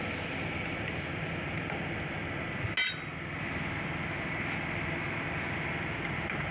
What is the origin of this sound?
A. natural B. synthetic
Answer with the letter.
A